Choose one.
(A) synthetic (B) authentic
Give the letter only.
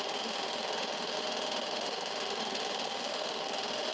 A